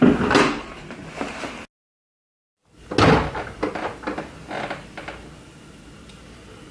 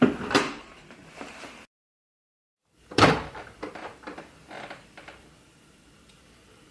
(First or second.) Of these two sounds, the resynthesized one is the second